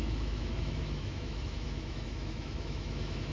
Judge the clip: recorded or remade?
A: remade